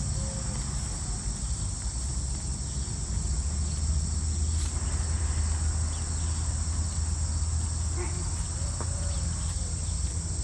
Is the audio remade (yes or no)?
no